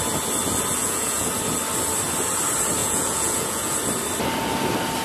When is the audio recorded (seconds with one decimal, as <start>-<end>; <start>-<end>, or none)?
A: 0.0-0.8; 1.3-2.8; 3.7-5.0